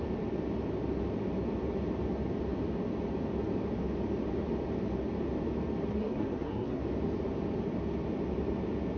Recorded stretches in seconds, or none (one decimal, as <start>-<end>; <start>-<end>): 0.0-5.9; 6.8-9.0